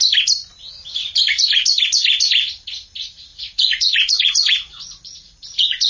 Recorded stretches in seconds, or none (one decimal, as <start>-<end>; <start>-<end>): 0.0-3.3